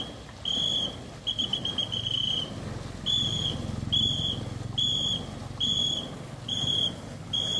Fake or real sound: real